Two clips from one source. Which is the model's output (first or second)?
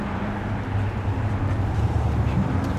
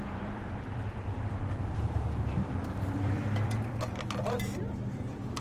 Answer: second